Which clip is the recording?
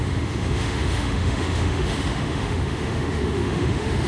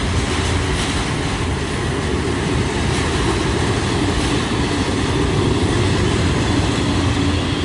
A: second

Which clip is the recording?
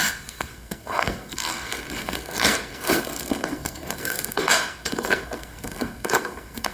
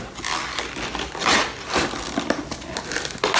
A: second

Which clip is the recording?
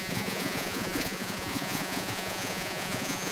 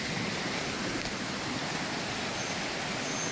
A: second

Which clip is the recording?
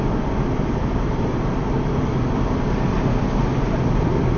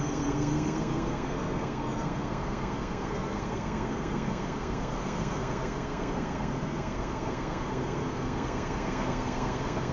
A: first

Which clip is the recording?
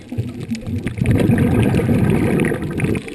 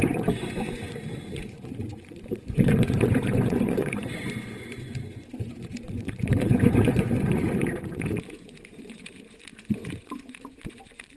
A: first